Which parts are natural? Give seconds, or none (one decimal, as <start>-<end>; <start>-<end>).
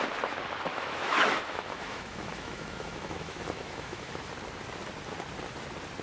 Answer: 0.0-0.7; 4.3-6.0